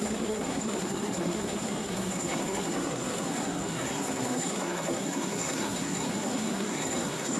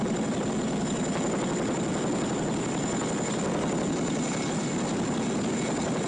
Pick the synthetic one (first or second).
first